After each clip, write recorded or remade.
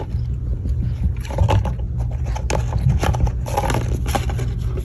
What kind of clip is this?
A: recorded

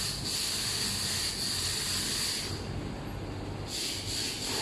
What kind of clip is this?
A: recorded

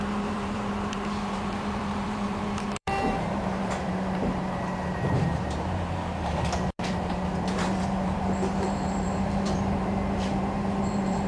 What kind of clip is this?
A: remade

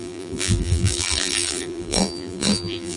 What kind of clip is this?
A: remade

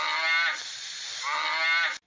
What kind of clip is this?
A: recorded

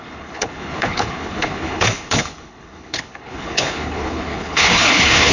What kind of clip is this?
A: remade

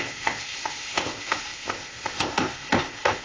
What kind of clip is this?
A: remade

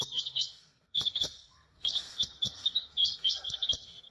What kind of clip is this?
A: remade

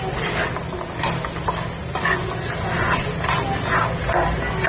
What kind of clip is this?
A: recorded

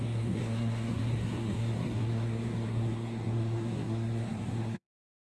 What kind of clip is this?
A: remade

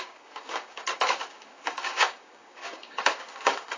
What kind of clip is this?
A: remade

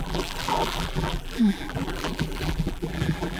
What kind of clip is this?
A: remade